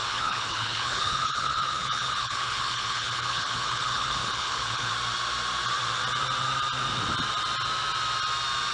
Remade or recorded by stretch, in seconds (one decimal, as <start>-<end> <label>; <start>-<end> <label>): 0.0-4.9 remade; 4.9-8.7 recorded